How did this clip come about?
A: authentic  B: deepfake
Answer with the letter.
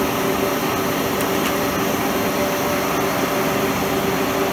A